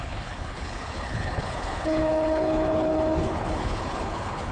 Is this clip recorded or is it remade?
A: remade